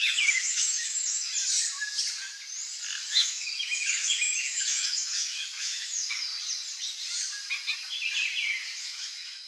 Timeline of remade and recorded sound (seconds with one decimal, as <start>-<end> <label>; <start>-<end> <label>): 0.0-1.3 remade; 1.3-3.1 recorded; 3.1-6.2 remade; 6.2-8.8 recorded; 8.8-9.5 remade